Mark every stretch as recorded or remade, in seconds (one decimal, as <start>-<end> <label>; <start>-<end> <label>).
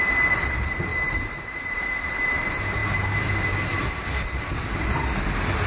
0.0-5.7 recorded